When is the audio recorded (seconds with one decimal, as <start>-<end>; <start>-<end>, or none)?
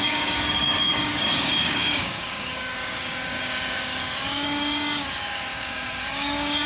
none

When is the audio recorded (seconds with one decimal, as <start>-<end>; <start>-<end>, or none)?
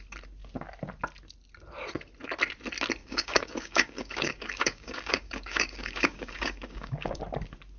0.0-3.0; 7.2-7.8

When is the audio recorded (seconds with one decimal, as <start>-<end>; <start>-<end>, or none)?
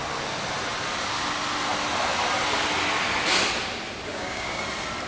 0.0-4.1; 4.6-5.1